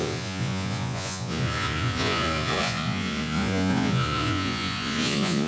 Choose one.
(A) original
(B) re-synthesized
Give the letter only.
B